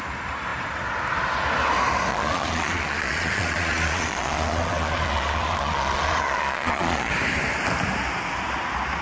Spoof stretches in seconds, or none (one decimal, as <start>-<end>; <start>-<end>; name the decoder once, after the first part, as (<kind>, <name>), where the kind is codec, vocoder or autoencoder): 2.1-7.1 (vocoder, Vocos)